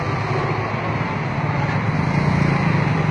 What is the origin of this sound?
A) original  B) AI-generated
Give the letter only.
A